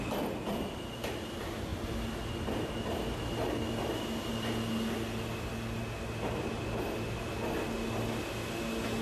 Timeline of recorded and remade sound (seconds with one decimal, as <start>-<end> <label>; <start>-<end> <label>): 0.0-9.0 recorded